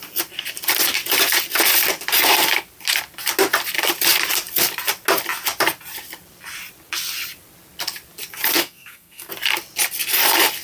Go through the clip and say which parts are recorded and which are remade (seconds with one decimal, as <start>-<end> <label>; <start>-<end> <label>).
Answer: 0.0-8.6 recorded; 8.6-9.3 remade; 9.3-10.6 recorded